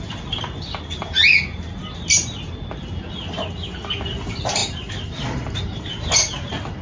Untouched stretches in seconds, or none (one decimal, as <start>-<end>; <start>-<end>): 0.0-4.6; 5.4-6.8